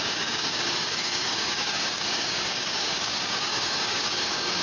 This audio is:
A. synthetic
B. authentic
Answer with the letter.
A